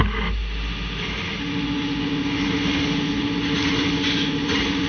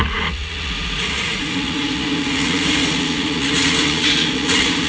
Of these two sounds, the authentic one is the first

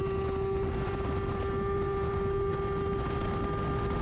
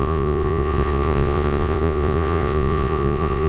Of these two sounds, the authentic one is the first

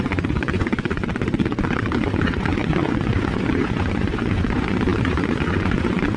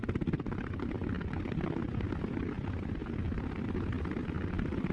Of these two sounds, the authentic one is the second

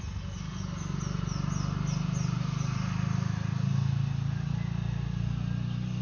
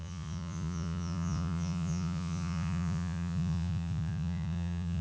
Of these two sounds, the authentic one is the first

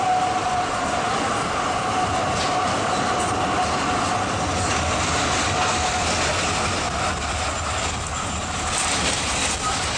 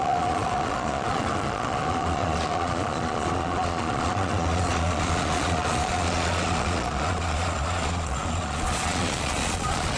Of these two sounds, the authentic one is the first